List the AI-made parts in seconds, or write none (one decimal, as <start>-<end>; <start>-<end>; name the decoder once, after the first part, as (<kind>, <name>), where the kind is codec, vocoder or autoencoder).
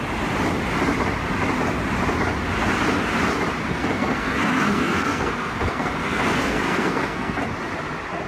3.7-7.4 (codec, SNAC)